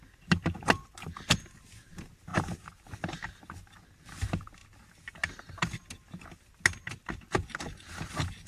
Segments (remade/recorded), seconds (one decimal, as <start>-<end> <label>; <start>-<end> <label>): 0.0-8.5 recorded